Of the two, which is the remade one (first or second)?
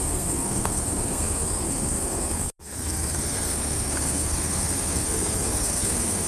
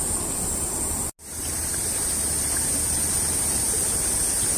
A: first